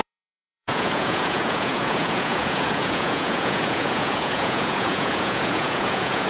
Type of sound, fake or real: fake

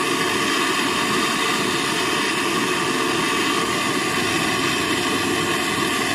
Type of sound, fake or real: real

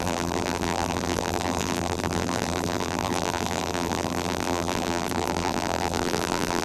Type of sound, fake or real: fake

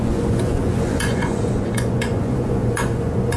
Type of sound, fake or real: fake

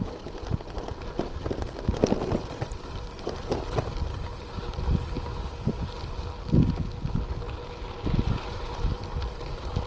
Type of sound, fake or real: real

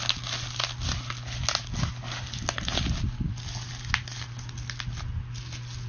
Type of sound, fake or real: real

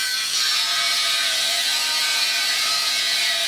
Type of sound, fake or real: fake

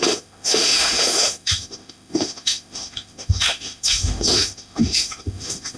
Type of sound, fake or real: fake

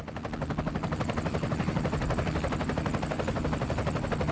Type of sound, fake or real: real